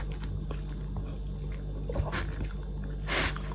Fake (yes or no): no